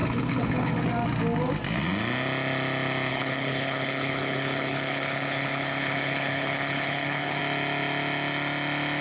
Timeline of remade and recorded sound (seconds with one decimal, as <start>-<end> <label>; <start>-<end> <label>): 0.0-0.8 remade; 0.8-3.1 recorded; 3.1-7.4 remade; 7.4-9.0 recorded